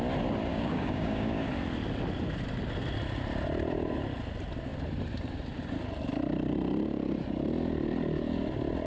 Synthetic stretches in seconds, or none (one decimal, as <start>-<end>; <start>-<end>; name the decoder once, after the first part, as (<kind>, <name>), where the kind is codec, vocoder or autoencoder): 0.5-1.5 (codec, DAC)